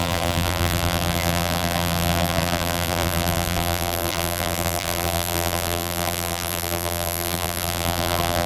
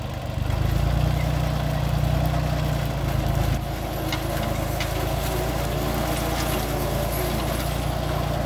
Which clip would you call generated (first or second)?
first